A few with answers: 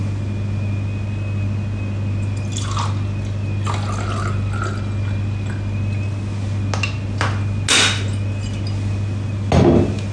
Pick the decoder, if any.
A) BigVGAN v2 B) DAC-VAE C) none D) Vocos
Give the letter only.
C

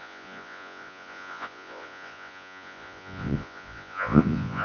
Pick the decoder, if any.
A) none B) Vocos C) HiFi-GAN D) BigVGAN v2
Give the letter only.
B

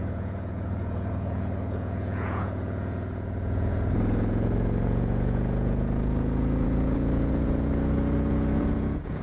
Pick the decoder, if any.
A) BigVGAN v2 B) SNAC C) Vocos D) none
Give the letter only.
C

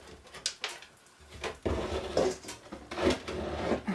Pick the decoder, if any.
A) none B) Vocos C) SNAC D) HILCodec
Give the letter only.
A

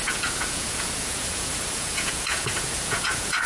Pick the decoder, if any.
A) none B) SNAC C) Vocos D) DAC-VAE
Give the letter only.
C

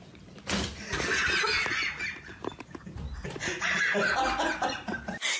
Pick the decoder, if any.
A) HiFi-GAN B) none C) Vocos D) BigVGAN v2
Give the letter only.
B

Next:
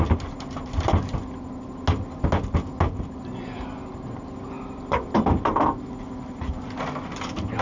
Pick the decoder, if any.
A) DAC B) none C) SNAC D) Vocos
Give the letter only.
B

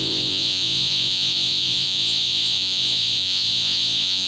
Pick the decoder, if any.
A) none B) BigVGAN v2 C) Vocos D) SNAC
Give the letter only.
C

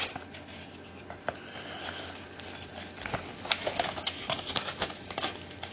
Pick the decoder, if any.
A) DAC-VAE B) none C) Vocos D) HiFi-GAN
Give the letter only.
B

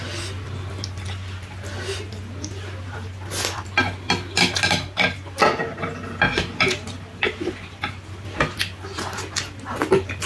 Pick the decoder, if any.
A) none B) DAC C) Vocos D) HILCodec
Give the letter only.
A